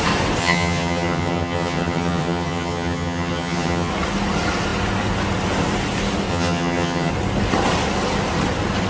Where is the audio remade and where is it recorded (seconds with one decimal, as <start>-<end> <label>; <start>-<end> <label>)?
0.0-0.4 recorded; 0.4-3.9 remade; 3.9-6.3 recorded; 6.3-7.1 remade; 7.1-8.9 recorded

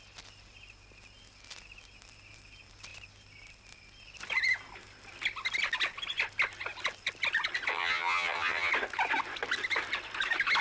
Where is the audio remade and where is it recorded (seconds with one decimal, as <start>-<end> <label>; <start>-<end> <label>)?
0.0-7.7 recorded; 7.7-8.7 remade; 8.7-10.6 recorded